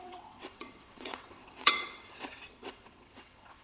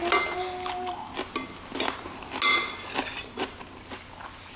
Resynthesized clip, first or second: first